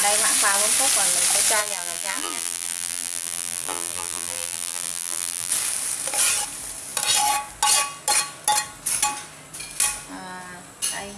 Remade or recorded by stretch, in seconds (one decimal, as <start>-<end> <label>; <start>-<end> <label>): 0.0-1.6 recorded; 1.6-5.5 remade; 5.5-11.2 recorded